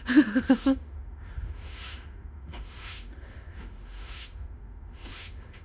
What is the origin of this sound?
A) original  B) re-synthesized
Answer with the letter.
B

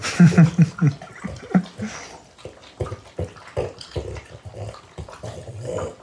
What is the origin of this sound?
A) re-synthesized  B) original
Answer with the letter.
B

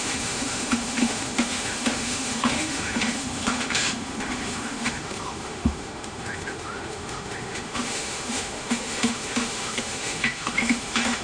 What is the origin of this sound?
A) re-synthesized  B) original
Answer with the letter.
A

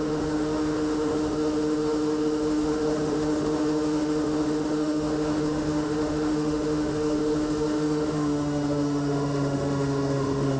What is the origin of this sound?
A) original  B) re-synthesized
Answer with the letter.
B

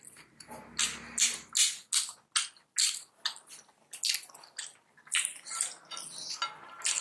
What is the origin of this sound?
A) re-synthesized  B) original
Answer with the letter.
B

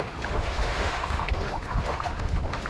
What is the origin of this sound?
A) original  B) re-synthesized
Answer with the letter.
B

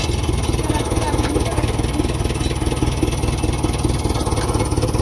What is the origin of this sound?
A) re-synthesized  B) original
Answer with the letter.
B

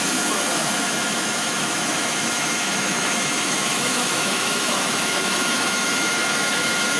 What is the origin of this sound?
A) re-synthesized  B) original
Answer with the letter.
A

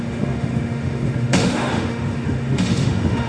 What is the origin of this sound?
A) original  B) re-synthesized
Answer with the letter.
B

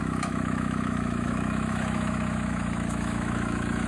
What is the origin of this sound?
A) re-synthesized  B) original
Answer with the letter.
A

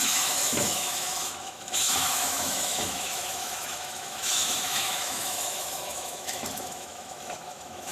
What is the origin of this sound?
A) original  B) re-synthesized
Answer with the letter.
B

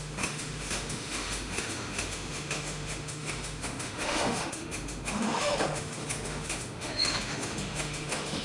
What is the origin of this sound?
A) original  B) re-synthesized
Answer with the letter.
B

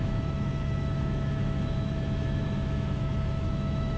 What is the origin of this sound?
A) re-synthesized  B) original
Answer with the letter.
A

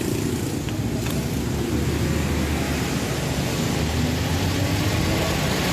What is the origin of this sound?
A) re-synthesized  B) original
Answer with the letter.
B